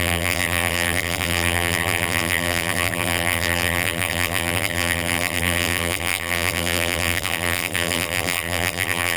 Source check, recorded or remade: remade